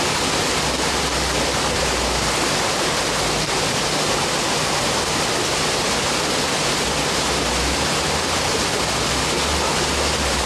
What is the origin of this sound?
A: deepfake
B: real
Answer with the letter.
B